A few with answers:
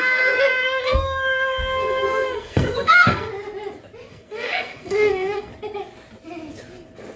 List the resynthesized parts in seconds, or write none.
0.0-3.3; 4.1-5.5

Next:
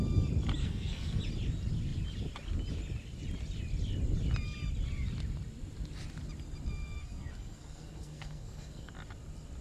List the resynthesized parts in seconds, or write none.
0.6-1.2; 7.0-8.9

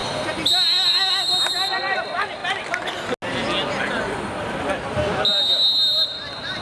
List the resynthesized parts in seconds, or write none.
none

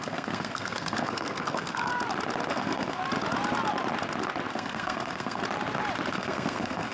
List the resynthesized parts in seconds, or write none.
0.0-1.9; 2.5-3.0; 4.5-5.4; 6.1-6.9